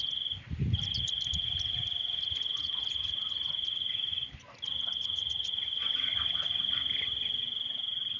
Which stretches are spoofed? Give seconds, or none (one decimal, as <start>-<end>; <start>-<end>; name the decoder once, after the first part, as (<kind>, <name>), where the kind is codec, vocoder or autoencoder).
none